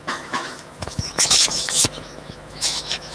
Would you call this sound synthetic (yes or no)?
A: yes